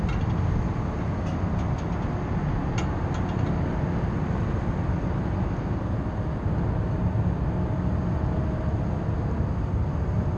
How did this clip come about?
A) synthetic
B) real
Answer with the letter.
B